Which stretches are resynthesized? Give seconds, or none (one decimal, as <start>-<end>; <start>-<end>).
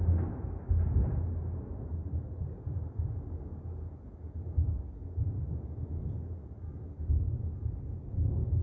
none